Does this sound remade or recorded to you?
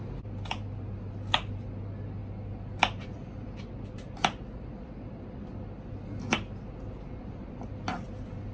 recorded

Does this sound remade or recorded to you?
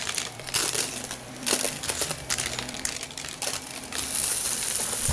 remade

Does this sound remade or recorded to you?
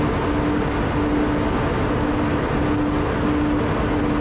recorded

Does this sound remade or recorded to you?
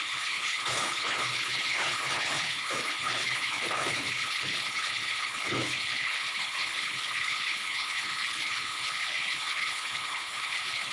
remade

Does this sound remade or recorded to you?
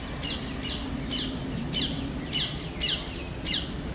recorded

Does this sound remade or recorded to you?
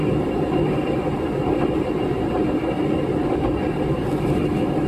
recorded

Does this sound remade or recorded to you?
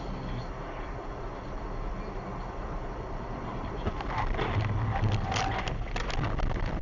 recorded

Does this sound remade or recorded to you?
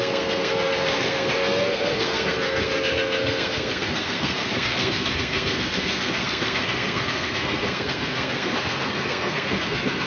remade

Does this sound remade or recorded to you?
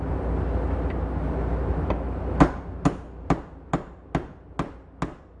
recorded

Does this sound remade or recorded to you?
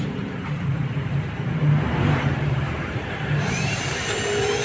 remade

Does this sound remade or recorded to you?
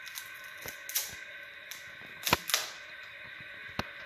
recorded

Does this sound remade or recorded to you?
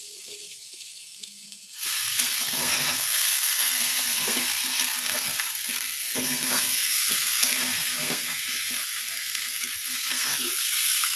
remade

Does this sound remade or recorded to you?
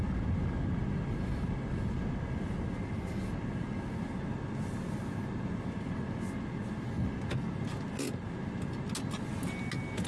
recorded